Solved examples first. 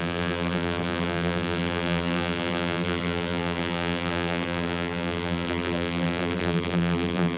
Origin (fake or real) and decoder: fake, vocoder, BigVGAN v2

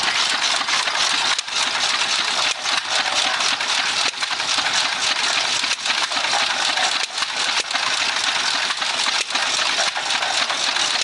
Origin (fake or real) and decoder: real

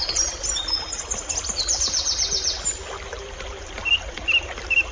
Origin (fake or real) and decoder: real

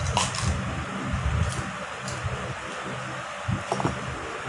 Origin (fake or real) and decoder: fake, vocoder, BigVGAN v2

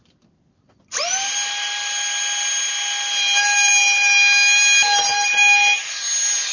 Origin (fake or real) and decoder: real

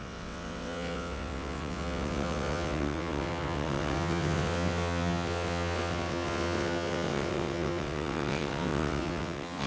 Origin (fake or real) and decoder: fake, vocoder, WaveNeXt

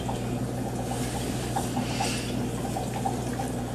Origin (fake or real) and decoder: real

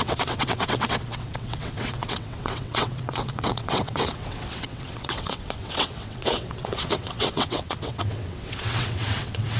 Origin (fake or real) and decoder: fake, vocoder, WaveNeXt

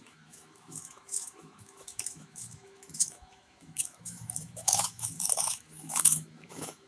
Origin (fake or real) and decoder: fake, autoencoder, DAC-VAE